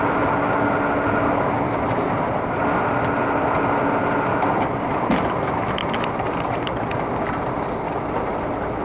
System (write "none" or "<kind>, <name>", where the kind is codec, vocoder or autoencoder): none